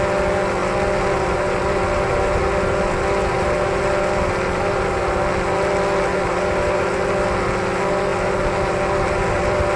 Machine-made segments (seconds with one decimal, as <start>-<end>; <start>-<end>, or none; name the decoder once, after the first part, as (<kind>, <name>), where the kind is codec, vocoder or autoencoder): none